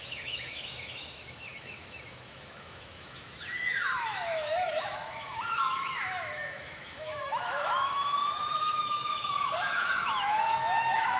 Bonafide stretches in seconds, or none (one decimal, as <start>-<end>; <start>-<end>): none

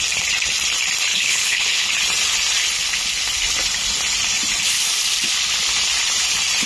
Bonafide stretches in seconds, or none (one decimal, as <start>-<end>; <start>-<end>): 0.0-1.1; 1.9-6.7

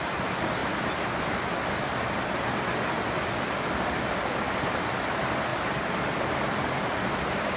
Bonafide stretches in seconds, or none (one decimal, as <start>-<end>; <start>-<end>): 0.0-5.5

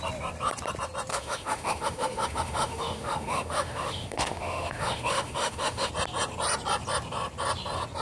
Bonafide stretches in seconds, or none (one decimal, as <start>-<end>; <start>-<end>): 0.0-1.1; 5.9-8.0

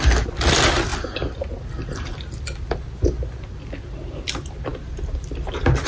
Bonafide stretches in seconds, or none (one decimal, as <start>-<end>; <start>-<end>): 0.0-5.9

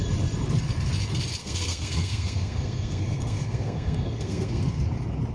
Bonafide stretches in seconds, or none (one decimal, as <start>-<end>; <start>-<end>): 0.0-1.4; 4.6-5.3

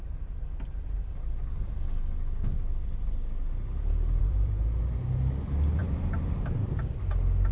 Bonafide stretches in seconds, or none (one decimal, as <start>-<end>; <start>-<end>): 0.0-4.2; 4.8-5.8; 6.6-7.5